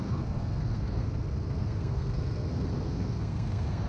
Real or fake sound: fake